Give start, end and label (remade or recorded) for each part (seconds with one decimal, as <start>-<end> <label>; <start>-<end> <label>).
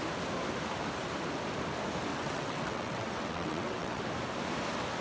0.0-2.1 recorded; 2.1-4.0 remade; 4.0-5.0 recorded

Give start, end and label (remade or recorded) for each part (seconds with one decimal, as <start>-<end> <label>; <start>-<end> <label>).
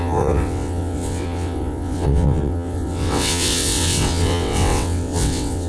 0.0-5.7 remade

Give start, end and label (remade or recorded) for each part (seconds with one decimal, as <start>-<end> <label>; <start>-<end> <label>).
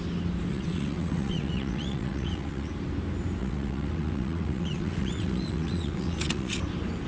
0.0-0.5 recorded; 0.5-2.7 remade; 2.7-3.4 recorded; 3.4-6.6 remade; 6.6-7.1 recorded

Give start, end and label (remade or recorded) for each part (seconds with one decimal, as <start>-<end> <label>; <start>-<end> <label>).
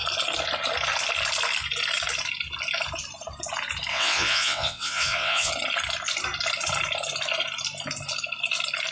0.0-3.9 recorded; 3.9-5.5 remade; 5.5-8.9 recorded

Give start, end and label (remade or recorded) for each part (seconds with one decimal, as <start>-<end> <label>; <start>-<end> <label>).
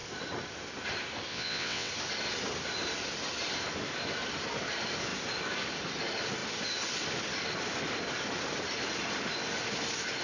0.0-1.3 recorded; 1.3-1.9 remade; 1.9-10.2 recorded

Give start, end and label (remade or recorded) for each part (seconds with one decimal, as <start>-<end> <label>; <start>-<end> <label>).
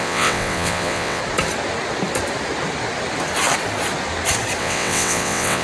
0.0-1.2 remade; 1.2-4.6 recorded; 4.6-5.6 remade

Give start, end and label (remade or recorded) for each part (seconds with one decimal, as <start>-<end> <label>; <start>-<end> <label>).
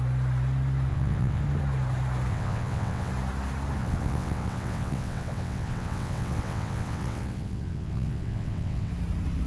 0.0-0.9 recorded; 0.9-1.4 remade; 1.4-2.3 recorded; 2.3-3.1 remade; 3.1-3.8 recorded; 3.8-8.9 remade; 8.9-9.5 recorded